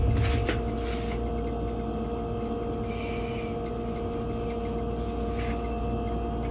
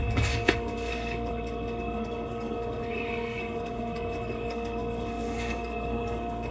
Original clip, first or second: first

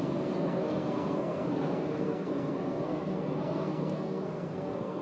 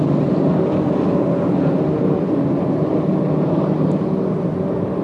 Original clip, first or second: second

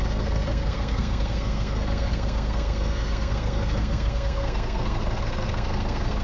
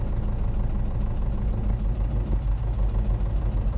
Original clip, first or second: second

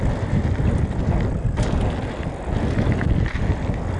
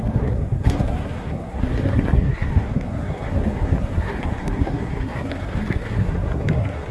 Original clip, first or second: first